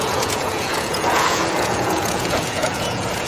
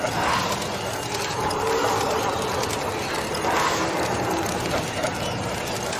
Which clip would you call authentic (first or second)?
second